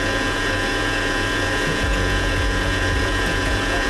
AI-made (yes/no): yes